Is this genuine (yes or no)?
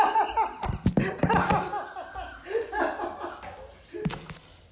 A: yes